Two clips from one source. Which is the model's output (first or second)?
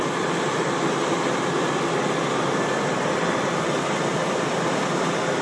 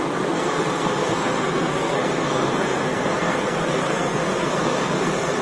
second